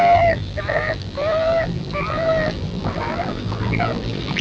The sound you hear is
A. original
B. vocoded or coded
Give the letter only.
B